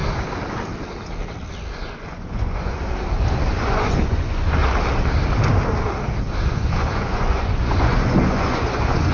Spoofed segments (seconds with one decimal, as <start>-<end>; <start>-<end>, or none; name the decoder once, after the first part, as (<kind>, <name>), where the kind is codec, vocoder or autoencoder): 1.7-2.8 (vocoder, Vocos); 3.5-4.6; 6.4-9.1